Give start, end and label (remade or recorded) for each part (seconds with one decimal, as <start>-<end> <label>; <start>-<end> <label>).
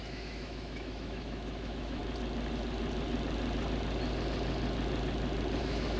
0.0-2.0 remade; 2.0-5.6 recorded; 5.6-6.0 remade